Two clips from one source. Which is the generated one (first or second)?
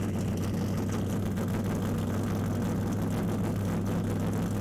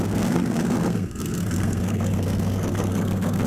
second